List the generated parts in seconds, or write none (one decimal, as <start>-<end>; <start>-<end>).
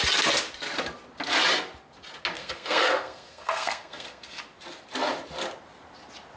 2.4-4.4